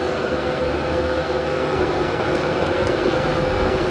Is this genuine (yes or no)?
no